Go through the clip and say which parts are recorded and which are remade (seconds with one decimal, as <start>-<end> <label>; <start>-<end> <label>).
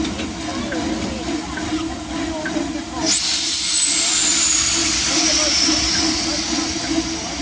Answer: 0.0-7.4 recorded